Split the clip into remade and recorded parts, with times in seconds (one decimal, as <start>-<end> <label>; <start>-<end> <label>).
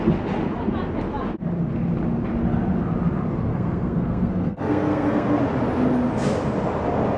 0.0-3.5 recorded; 3.5-5.4 remade; 5.4-7.2 recorded